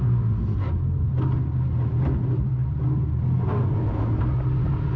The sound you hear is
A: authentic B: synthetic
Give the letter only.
A